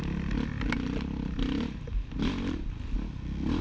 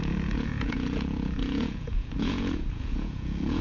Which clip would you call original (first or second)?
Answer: first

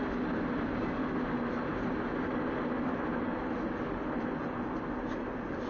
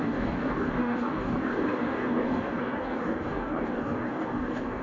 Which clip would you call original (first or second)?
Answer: first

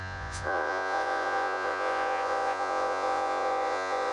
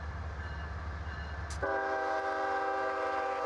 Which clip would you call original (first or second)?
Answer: second